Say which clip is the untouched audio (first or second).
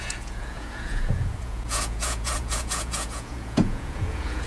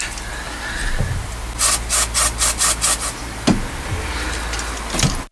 second